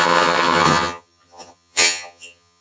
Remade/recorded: remade